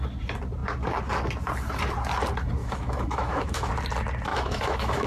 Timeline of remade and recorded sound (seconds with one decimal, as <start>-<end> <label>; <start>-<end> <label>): 0.0-2.6 recorded; 2.6-3.7 remade; 3.7-4.3 recorded; 4.3-5.1 remade